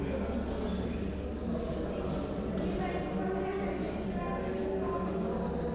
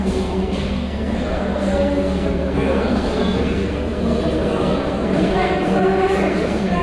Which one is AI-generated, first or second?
second